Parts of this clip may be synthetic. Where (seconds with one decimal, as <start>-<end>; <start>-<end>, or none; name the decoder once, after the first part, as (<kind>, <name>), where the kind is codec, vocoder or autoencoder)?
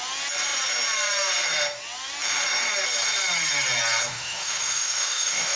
4.1-5.6 (autoencoder, DAC-VAE)